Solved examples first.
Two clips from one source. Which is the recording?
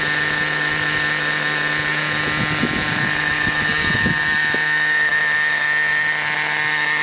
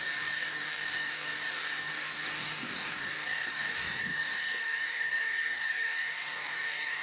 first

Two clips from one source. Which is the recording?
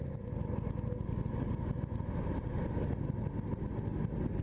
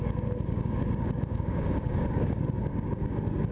first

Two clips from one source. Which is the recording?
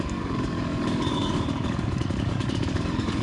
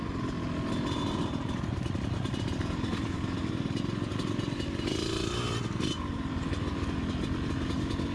second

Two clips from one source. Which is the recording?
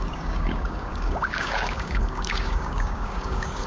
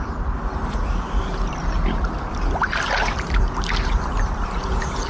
second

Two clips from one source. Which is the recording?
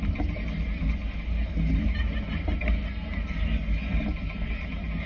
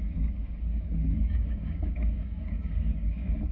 first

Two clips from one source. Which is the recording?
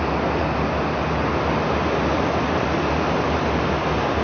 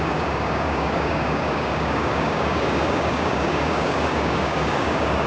first